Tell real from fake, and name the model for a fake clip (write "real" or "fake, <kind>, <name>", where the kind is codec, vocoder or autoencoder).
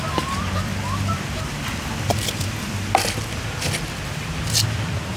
real